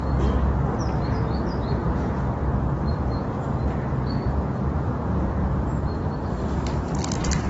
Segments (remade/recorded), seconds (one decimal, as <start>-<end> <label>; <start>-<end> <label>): 0.0-1.8 recorded; 1.8-2.3 remade; 2.3-2.9 recorded; 2.9-6.0 remade; 6.0-7.5 recorded